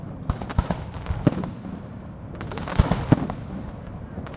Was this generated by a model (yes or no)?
yes